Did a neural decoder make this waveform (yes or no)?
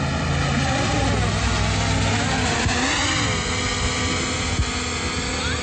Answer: no